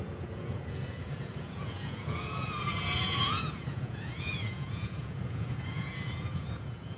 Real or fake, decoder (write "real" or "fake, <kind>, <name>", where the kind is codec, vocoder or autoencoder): fake, vocoder, Vocos